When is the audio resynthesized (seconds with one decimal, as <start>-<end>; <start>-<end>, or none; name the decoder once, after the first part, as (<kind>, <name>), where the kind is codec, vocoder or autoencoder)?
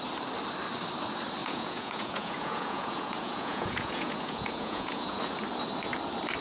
1.4-5.2 (vocoder, Vocos)